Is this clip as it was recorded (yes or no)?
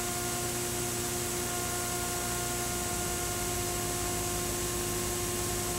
yes